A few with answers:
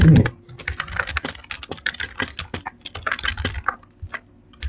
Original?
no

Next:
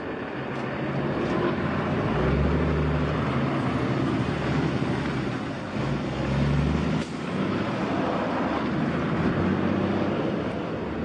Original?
yes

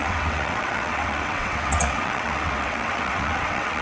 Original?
no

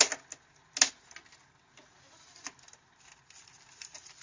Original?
yes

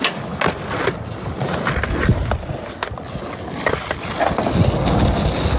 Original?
yes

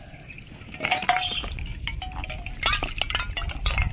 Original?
yes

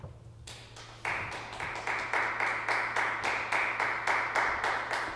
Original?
yes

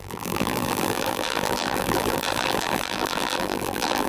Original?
no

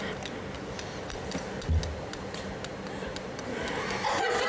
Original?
yes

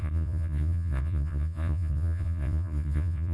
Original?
no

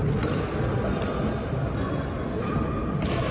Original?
yes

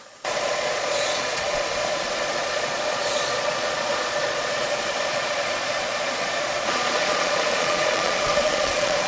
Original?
no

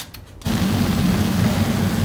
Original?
yes